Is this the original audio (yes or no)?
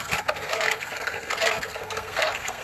no